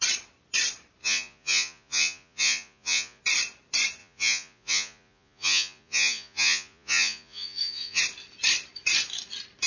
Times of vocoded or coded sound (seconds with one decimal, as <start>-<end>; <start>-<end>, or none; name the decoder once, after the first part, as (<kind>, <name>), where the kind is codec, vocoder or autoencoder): 1.0-3.2 (vocoder, Vocos); 4.0-8.0